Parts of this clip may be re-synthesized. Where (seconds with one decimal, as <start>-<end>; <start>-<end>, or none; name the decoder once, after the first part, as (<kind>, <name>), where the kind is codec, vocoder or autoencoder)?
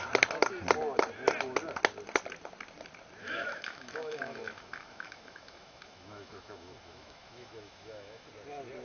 3.2-8.3 (autoencoder, DAC-VAE)